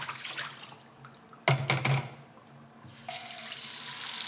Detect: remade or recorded recorded